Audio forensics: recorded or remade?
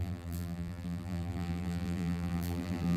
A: remade